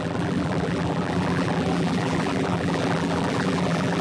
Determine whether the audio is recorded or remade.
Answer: remade